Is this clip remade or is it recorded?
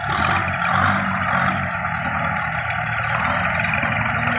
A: recorded